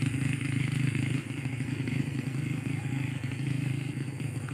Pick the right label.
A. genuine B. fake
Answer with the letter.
B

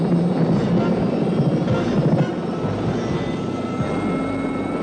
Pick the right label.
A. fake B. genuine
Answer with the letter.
B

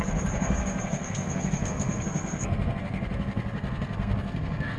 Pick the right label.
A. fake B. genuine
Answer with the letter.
A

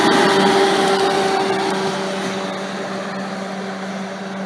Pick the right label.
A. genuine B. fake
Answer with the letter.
A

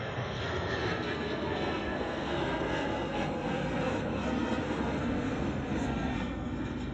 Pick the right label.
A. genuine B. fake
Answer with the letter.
B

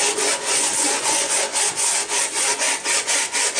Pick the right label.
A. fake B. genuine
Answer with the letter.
A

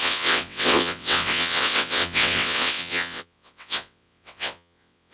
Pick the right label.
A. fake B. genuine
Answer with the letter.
A